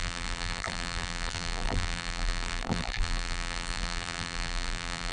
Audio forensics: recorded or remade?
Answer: remade